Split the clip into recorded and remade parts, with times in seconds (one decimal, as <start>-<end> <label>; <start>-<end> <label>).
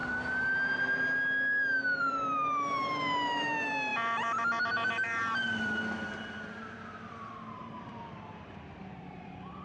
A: 0.0-2.0 recorded; 2.0-9.6 remade